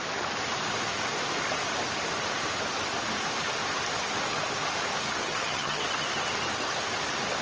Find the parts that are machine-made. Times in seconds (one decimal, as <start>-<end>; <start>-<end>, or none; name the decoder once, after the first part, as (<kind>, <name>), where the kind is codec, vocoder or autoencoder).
5.2-5.8 (vocoder, HiFi-GAN)